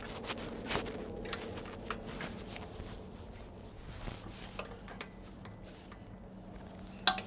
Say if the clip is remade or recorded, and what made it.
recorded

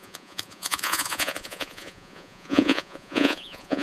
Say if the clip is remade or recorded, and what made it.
remade, vocoder, Vocos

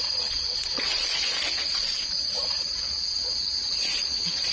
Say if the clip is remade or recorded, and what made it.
remade, vocoder, Vocos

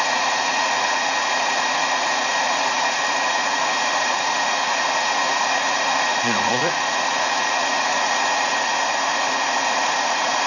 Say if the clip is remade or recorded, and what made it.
remade, vocoder, Vocos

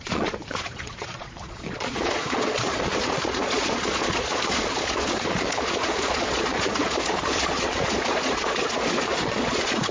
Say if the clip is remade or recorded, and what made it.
remade, vocoder, Vocos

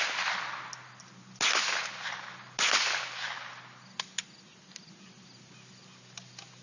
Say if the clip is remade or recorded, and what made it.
recorded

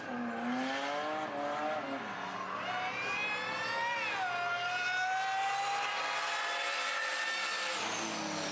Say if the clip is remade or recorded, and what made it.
recorded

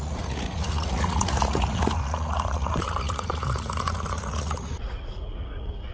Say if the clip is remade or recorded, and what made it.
remade, vocoder, Vocos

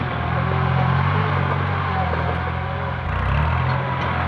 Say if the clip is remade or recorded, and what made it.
recorded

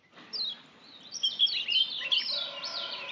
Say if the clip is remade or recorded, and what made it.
recorded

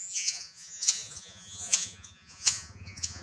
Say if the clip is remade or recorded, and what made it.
remade, vocoder, Vocos